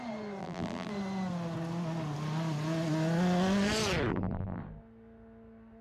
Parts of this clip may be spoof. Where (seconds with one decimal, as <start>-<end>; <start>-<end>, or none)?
0.4-0.9; 4.1-4.6